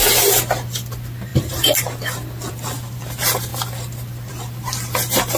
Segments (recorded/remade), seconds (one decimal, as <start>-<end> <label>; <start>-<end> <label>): 0.0-5.4 recorded